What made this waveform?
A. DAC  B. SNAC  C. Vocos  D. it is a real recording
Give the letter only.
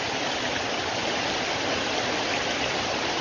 D